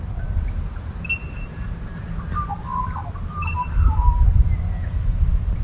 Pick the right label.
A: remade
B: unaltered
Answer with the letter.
B